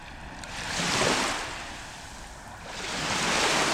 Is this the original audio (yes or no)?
yes